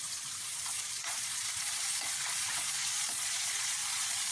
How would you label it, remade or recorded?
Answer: remade